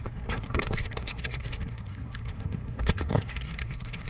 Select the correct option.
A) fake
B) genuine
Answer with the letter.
A